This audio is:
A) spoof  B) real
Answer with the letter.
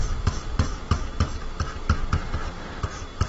B